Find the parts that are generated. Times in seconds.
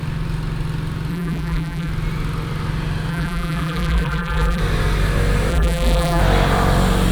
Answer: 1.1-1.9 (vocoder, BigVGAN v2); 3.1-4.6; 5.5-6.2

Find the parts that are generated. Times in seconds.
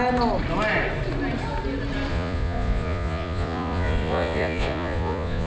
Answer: 2.1-5.5 (vocoder, Vocos)